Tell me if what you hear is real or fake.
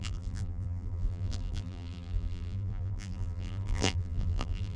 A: fake